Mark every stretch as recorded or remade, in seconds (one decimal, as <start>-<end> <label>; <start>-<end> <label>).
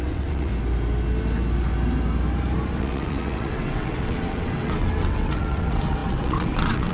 0.0-0.5 remade; 0.5-2.8 recorded; 2.8-6.9 remade